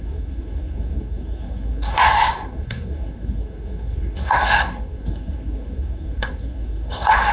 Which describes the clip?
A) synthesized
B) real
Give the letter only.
A